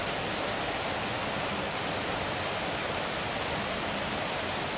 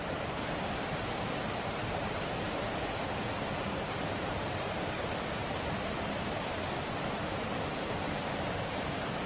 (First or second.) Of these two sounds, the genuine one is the first